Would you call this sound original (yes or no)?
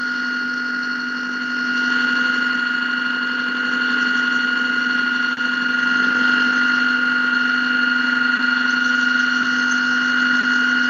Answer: yes